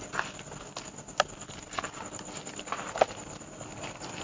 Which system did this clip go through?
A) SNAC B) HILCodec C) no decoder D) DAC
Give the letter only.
C